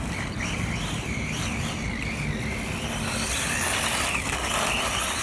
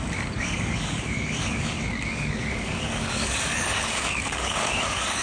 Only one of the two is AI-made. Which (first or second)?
second